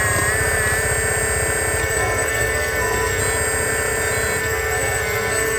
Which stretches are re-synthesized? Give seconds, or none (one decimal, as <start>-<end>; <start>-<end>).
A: 1.8-3.2; 4.4-5.6